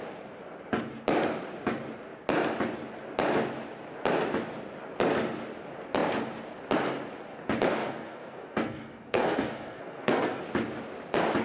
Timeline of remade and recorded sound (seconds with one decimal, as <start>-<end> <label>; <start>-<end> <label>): 0.0-7.8 recorded; 7.8-10.4 remade; 10.4-11.4 recorded